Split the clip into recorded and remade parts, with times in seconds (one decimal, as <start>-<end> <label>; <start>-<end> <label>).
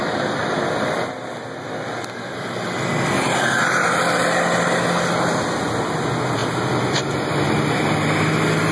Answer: 0.0-8.7 recorded